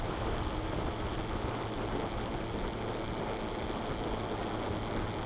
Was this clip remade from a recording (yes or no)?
no